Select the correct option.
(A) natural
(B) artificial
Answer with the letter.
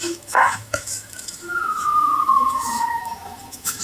B